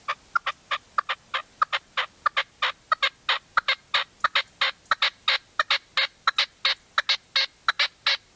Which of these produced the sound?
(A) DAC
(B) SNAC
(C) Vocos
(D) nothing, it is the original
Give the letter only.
D